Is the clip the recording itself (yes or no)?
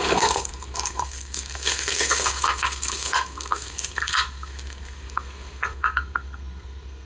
no